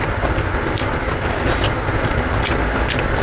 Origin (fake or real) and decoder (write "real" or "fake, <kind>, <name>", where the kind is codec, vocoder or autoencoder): real